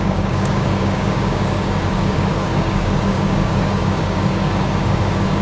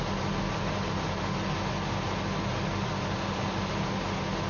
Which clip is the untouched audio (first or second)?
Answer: second